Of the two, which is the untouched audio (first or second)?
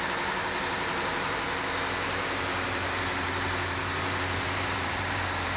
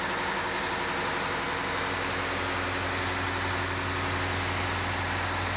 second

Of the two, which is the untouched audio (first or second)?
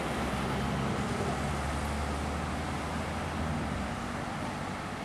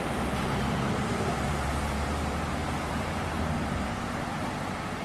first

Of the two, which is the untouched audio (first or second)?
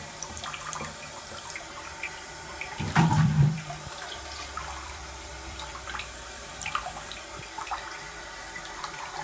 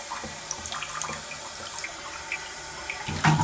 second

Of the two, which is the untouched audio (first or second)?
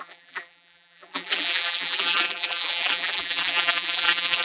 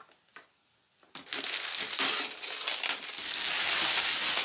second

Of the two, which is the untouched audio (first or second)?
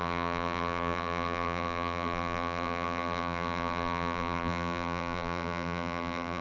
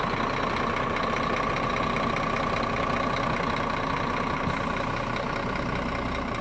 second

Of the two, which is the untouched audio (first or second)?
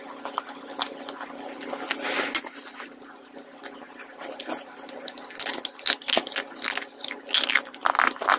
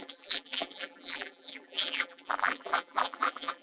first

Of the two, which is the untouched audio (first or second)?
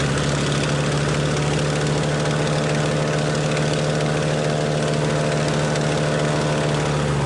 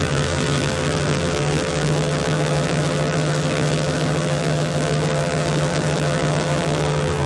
first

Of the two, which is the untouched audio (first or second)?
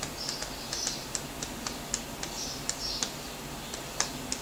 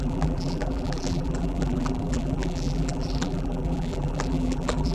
first